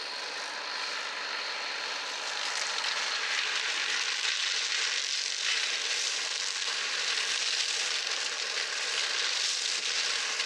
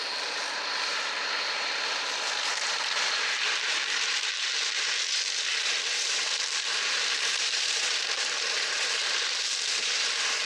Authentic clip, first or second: first